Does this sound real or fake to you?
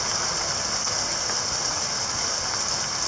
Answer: real